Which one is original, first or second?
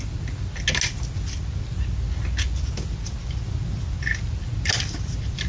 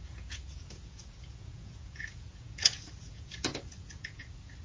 first